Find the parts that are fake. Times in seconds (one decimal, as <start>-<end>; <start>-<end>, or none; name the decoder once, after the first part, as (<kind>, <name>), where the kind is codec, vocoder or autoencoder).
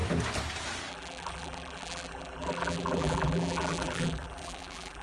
0.9-5.0 (vocoder, BigVGAN v2)